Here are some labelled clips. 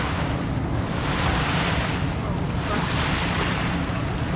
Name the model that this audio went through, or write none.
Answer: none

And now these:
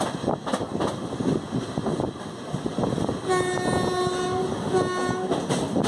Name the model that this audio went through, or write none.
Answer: none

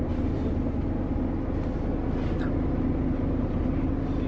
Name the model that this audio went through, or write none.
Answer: none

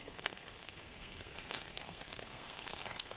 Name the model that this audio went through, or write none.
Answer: codec, SNAC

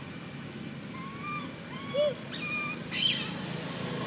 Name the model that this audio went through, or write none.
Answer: none